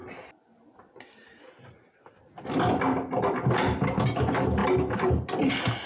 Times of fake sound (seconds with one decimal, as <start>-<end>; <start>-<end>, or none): none